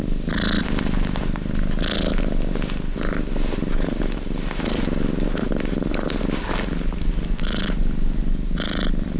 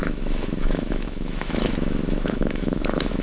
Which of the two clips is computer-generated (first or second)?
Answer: second